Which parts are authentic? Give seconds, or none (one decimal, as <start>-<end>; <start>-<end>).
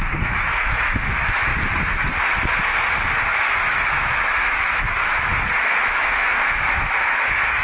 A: 1.5-3.6